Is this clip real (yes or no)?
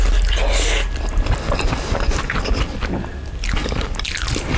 yes